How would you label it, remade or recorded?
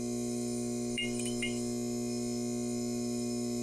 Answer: remade